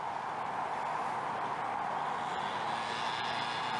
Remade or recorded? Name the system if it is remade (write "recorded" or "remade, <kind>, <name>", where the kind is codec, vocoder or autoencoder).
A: recorded